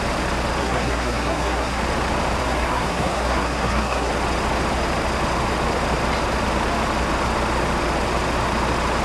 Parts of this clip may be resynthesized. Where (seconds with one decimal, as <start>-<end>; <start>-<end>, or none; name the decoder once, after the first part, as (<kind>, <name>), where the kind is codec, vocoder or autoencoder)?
0.6-1.8 (codec, SNAC); 2.4-4.1